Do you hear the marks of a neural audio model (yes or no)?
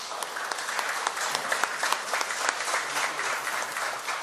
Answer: no